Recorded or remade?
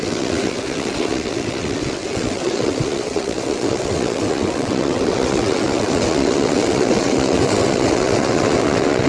remade